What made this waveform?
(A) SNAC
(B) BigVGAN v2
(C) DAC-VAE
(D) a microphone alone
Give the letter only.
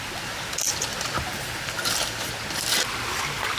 D